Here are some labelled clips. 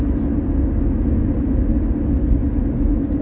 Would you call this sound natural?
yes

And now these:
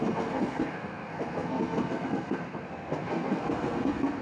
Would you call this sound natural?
no